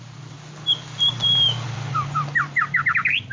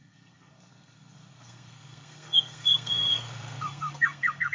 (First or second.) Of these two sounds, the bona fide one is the first